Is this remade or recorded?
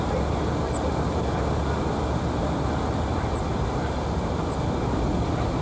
recorded